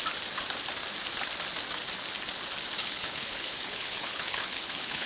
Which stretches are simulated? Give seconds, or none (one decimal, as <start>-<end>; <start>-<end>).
2.8-5.1